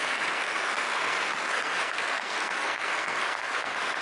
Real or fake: fake